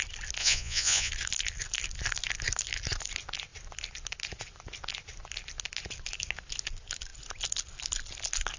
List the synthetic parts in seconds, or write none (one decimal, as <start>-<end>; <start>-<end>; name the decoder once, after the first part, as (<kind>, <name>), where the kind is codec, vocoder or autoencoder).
0.4-1.1 (vocoder, Vocos)